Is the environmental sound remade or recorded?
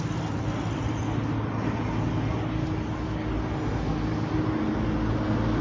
recorded